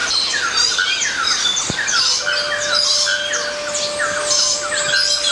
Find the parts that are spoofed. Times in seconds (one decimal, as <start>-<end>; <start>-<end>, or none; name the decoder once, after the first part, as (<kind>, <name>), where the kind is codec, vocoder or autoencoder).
0.0-2.1 (vocoder, BigVGAN v2); 4.2-5.3